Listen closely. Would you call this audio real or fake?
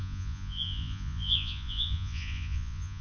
fake